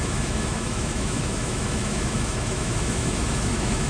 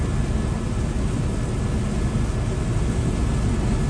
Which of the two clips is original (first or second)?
second